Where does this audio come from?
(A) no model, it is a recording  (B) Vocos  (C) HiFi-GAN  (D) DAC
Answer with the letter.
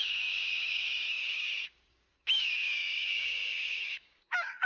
D